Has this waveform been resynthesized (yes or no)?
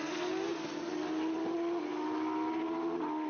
no